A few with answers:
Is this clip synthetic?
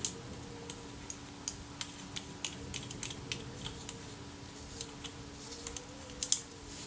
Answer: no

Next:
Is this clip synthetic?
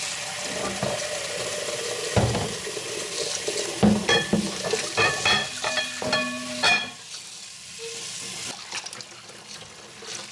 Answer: no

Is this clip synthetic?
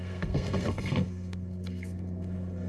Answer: yes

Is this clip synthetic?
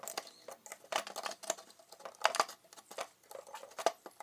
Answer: no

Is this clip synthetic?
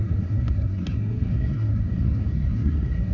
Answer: yes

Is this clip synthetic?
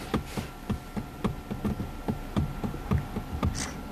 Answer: no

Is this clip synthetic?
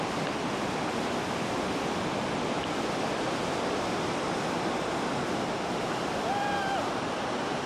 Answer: no